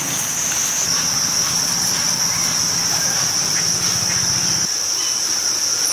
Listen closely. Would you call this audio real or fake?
real